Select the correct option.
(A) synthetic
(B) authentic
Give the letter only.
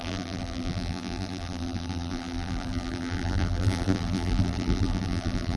A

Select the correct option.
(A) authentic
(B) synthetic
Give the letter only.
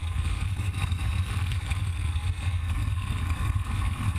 B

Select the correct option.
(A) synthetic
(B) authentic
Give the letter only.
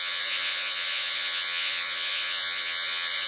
A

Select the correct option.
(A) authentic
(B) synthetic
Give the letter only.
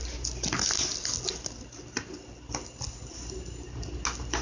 A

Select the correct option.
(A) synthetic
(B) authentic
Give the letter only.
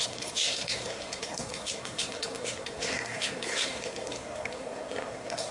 A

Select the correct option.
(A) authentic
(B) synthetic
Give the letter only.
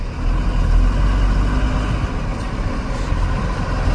A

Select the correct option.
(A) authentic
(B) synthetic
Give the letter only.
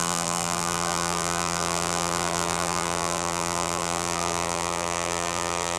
B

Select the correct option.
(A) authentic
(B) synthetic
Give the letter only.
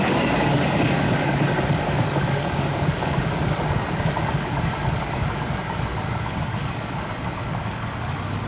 B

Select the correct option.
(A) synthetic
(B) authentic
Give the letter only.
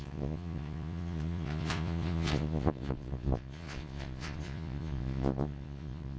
A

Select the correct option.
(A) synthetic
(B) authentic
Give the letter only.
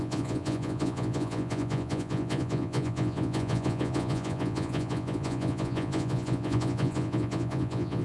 A